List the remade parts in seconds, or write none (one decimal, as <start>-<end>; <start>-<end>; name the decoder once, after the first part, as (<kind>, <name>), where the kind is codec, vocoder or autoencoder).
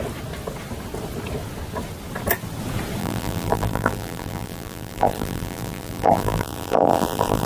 3.0-7.5 (vocoder, BigVGAN v2)